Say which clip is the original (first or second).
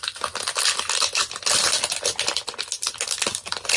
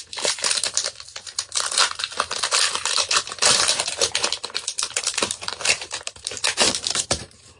first